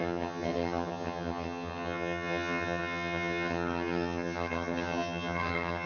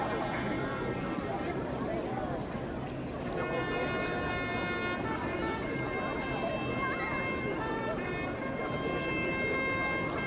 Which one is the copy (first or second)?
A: first